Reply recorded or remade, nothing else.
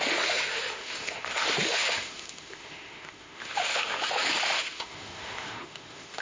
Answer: remade